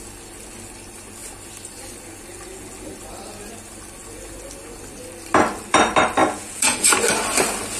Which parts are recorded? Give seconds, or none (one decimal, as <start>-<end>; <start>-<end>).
0.0-6.2; 6.9-7.8